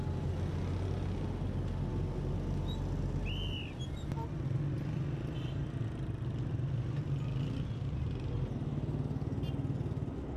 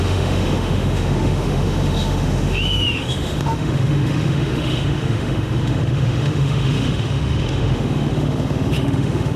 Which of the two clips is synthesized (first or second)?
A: second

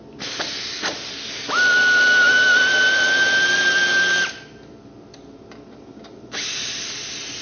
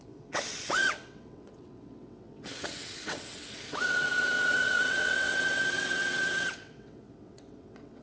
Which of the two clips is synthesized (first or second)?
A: second